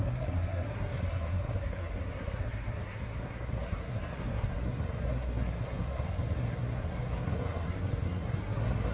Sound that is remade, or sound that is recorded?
remade